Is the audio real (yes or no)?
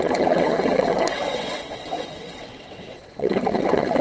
no